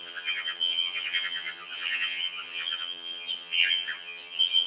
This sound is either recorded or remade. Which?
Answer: remade